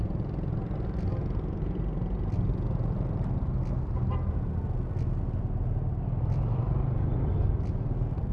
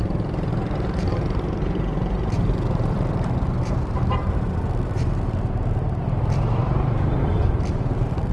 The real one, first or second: first